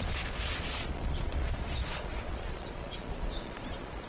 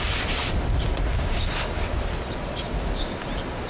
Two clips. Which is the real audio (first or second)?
second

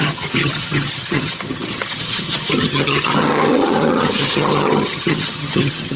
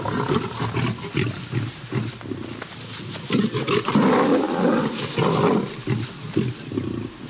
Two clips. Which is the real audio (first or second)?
second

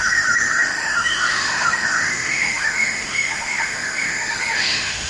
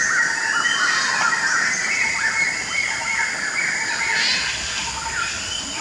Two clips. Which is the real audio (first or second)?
second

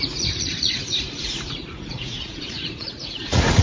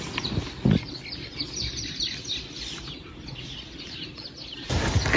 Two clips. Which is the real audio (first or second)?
second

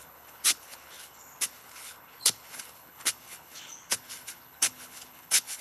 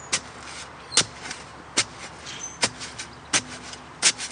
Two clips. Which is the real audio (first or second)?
second